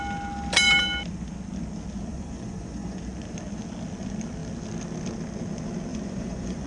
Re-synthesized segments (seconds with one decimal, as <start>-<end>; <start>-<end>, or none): 2.1-3.0; 5.9-6.7